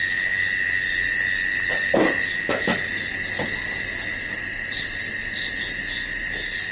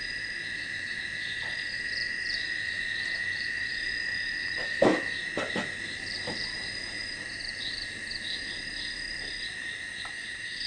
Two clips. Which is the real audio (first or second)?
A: first